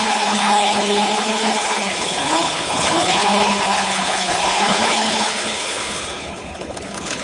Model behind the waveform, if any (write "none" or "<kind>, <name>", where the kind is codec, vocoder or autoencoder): codec, HILCodec